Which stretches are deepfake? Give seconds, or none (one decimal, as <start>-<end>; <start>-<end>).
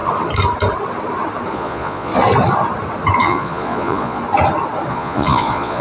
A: 1.5-2.1; 3.2-4.2; 4.9-5.8